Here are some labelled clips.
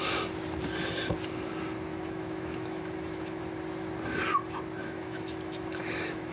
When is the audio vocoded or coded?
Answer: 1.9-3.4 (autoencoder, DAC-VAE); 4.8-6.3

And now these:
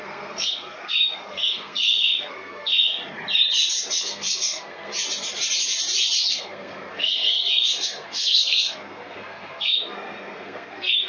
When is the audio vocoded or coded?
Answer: 0.0-3.0 (codec, SNAC); 4.0-4.9; 6.3-11.1

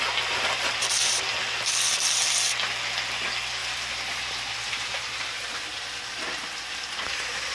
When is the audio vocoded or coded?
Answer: 3.6-5.5 (vocoder, BigVGAN v2)

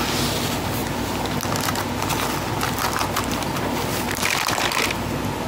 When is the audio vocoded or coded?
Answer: none